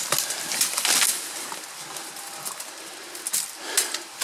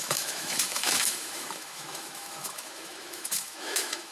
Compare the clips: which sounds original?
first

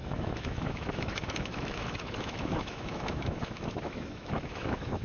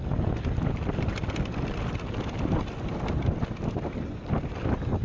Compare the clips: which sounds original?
second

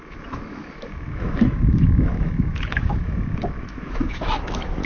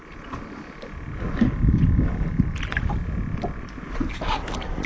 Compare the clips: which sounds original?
second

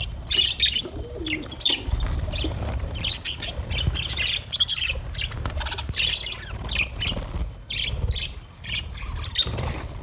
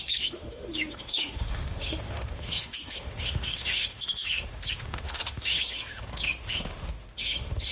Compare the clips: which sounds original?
first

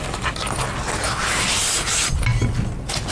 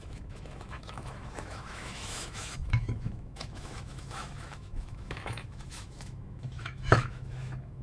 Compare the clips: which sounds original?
first